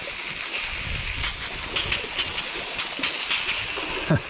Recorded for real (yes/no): yes